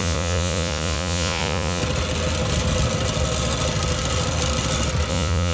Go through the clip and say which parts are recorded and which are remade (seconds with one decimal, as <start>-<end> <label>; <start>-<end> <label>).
0.0-1.8 remade; 1.8-5.1 recorded; 5.1-5.5 remade